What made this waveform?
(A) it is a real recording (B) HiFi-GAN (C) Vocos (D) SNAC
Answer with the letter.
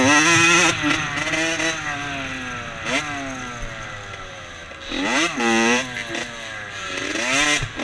A